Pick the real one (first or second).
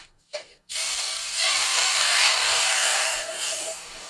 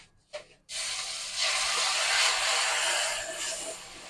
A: second